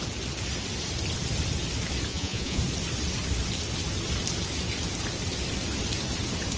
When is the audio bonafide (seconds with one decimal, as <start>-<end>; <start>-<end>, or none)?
0.0-2.1; 2.6-6.6